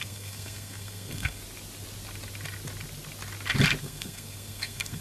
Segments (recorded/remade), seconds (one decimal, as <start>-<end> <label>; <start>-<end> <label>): 0.0-1.4 remade; 1.4-3.8 recorded; 3.8-5.0 remade